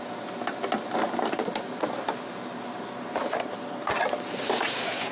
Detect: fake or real real